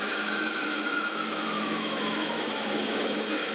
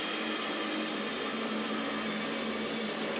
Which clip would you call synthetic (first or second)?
first